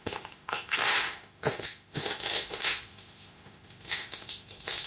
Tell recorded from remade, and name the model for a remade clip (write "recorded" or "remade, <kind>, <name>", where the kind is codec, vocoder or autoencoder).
remade, autoencoder, DAC-VAE